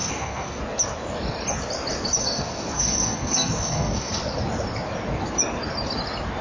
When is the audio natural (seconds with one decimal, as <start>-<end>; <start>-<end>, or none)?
0.6-2.2; 4.2-6.4

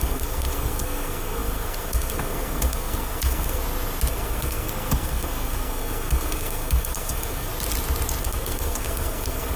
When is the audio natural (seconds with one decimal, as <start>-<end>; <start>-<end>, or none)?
3.6-4.1; 7.5-8.2

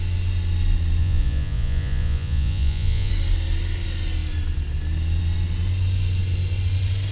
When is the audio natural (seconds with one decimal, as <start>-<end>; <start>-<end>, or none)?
0.0-1.0; 3.1-7.1

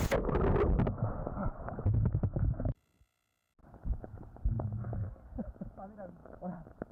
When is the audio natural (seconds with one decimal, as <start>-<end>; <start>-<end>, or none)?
0.0-6.9

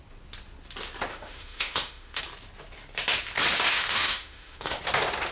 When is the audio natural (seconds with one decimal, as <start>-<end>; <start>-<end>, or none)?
0.0-1.1; 2.2-3.7; 4.8-5.3